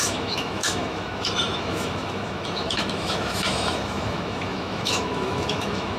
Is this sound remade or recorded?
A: remade